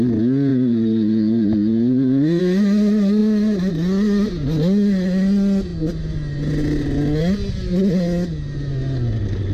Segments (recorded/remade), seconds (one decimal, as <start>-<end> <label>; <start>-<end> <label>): 0.0-0.5 recorded; 0.5-2.4 remade; 2.4-9.5 recorded